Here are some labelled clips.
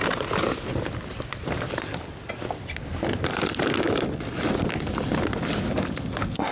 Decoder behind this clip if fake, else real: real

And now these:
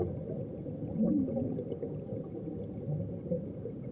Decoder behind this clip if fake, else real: real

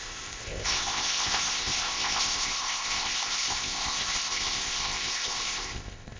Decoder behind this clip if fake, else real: fake, codec, ZipCodec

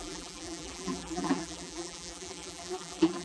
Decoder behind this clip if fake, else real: fake, vocoder, BigVGAN v2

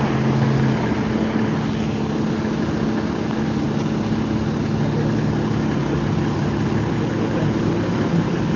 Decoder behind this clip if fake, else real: real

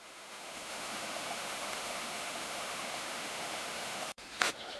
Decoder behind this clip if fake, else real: fake, autoencoder, DAC-VAE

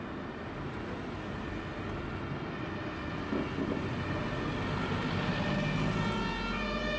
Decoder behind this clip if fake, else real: real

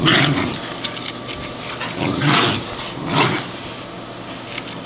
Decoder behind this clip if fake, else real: real